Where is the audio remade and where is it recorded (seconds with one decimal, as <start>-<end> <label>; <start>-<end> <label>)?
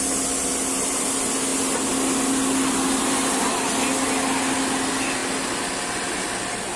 0.0-6.8 recorded